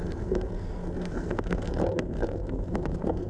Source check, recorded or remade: remade